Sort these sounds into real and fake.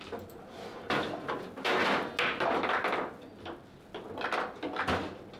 real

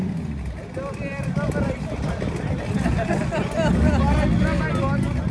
real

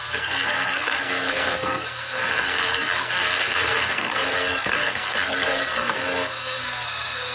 fake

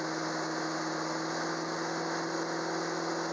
real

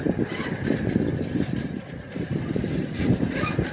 fake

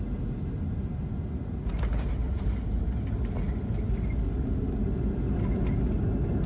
real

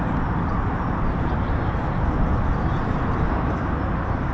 real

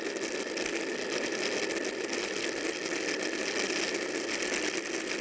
real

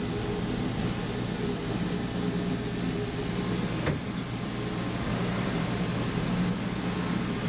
real